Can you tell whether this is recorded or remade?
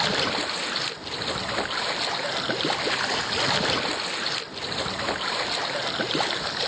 recorded